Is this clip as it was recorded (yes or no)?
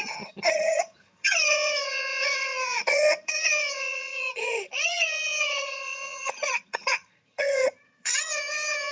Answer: no